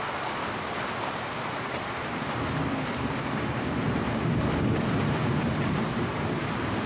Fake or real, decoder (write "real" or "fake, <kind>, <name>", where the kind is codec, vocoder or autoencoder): fake, vocoder, BigVGAN v2